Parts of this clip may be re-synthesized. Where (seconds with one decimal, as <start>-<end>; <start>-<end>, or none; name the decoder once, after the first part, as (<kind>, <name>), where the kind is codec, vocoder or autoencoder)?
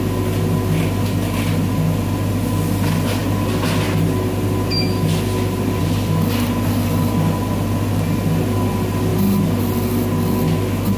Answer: none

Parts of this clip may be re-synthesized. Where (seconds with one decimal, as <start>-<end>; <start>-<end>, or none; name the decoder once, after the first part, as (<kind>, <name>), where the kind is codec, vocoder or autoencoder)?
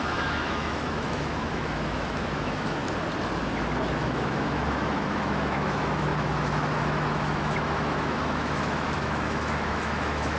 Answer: 0.0-2.8 (autoencoder, DAC-VAE); 3.9-10.4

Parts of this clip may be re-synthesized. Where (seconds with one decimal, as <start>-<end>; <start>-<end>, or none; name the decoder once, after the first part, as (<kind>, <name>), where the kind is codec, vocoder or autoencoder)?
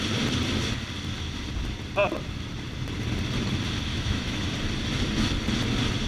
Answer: 3.9-4.5 (autoencoder, DAC-VAE)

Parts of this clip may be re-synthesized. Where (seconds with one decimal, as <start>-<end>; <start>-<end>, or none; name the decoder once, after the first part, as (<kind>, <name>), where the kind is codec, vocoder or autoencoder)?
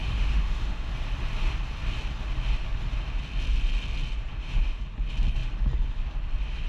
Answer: 0.0-0.9 (autoencoder, DAC-VAE); 4.3-4.8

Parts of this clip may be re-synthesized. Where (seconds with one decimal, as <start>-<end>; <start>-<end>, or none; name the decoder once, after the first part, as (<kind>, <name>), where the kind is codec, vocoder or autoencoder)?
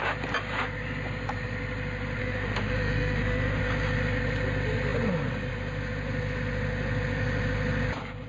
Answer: 2.2-3.6 (autoencoder, DAC-VAE)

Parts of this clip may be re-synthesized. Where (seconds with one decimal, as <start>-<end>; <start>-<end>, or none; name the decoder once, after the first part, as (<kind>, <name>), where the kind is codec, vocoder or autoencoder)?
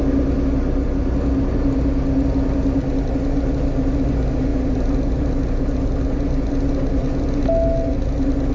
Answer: none